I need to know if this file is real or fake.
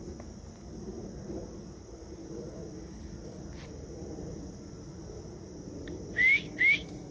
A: real